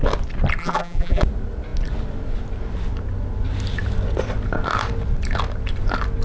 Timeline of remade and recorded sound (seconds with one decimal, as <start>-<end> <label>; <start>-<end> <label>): 0.0-0.6 recorded; 0.6-1.2 remade; 1.2-6.2 recorded